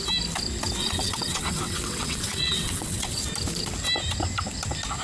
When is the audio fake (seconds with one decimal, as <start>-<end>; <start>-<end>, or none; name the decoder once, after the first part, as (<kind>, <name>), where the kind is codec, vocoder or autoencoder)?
0.8-3.2 (vocoder, WaveNeXt)